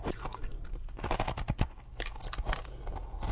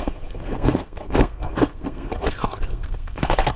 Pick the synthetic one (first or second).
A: second